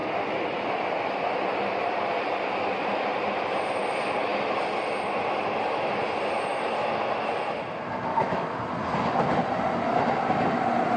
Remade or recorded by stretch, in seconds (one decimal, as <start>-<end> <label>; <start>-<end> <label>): 0.0-8.1 recorded; 8.1-8.6 remade; 8.6-11.0 recorded